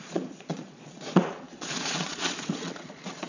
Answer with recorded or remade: remade